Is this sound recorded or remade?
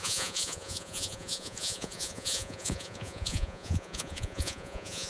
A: remade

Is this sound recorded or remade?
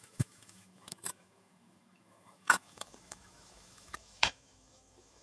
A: remade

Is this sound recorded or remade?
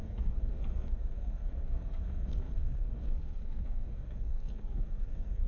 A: remade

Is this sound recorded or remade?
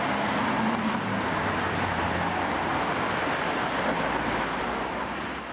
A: recorded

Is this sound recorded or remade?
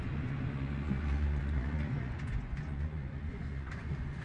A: remade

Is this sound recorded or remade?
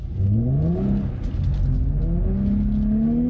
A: recorded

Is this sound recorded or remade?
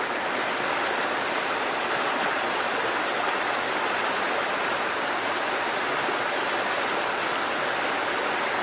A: recorded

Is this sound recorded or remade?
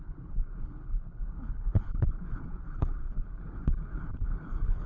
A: remade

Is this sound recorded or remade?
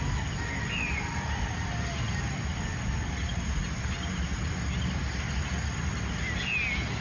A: recorded